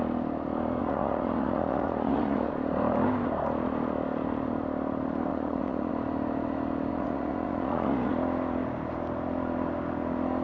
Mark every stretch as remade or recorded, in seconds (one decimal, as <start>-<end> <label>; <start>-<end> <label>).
0.0-0.8 recorded; 0.8-2.5 remade; 2.5-5.3 recorded; 5.3-5.9 remade; 5.9-6.9 recorded; 6.9-8.1 remade; 8.1-10.4 recorded